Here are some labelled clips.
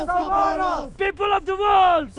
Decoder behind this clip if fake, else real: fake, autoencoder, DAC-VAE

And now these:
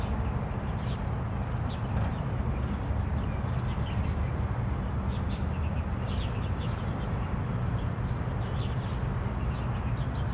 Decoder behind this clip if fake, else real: real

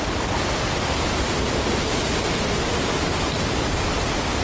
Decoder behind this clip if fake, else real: real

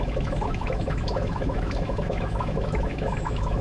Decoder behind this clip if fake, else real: fake, autoencoder, DAC-VAE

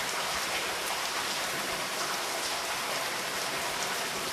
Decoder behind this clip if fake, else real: real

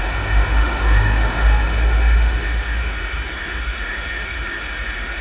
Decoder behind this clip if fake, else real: fake, autoencoder, DAC-VAE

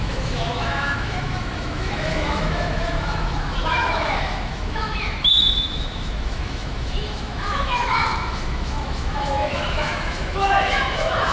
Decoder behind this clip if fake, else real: fake, autoencoder, DAC-VAE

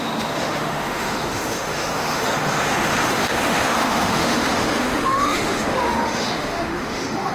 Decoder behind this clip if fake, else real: fake, autoencoder, DAC-VAE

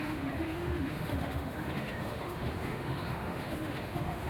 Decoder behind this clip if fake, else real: fake, autoencoder, DAC-VAE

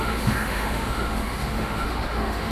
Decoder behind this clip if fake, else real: fake, autoencoder, DAC-VAE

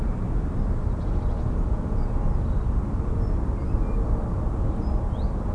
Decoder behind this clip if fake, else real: real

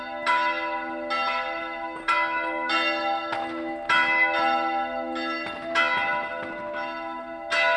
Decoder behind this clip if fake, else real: real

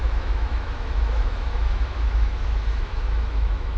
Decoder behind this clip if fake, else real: fake, autoencoder, DAC-VAE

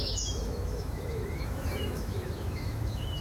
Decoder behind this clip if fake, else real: fake, autoencoder, DAC-VAE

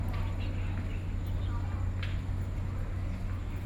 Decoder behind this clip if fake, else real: real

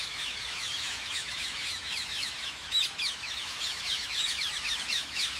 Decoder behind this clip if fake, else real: fake, autoencoder, DAC-VAE